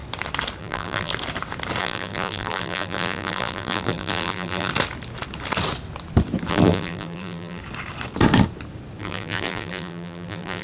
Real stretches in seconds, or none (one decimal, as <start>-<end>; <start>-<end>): 0.0-0.6; 1.1-1.8; 4.7-6.5; 7.6-9.0